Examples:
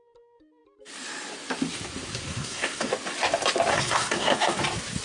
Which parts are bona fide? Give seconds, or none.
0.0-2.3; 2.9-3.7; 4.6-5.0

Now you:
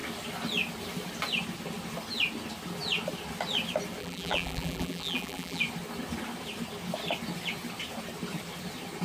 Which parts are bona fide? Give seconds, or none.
0.0-4.0; 5.6-9.0

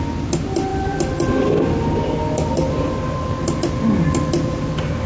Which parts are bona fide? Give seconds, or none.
0.0-5.1

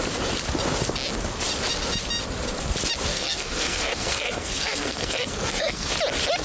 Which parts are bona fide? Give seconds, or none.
0.0-3.1; 5.9-6.4